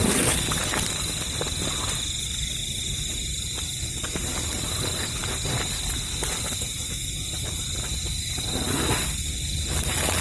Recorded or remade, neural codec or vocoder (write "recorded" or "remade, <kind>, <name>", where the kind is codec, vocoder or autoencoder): recorded